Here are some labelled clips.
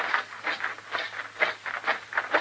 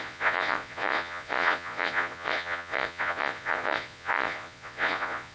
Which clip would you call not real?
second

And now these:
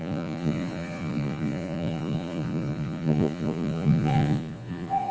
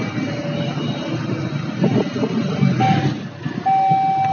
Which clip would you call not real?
first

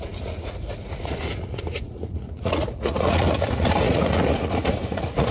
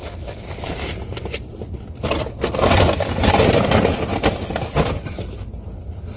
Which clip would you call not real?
first